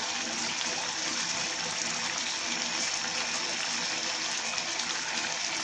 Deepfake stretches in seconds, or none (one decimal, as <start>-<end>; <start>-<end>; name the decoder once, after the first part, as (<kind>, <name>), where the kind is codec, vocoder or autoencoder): none